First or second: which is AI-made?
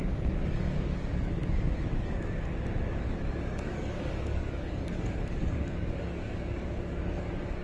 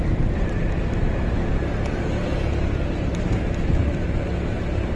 first